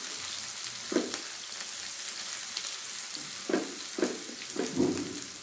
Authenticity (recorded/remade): recorded